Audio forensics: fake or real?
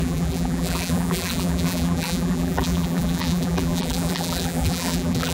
fake